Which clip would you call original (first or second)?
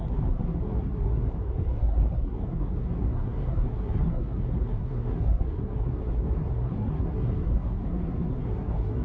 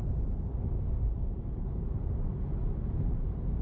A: second